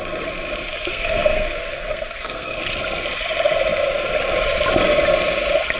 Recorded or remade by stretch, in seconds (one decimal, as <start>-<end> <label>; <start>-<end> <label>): 0.0-0.9 recorded; 0.9-2.6 remade; 2.6-5.8 recorded